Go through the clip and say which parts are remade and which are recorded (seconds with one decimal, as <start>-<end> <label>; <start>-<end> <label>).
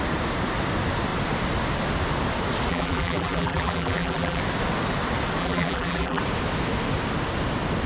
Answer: 0.0-2.7 recorded; 2.7-4.4 remade; 4.4-5.4 recorded; 5.4-6.2 remade; 6.2-7.9 recorded